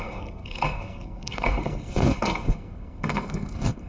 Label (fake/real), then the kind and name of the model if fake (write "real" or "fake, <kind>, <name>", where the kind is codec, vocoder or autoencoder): fake, codec, SNAC